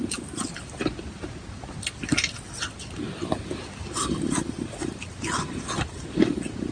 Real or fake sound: real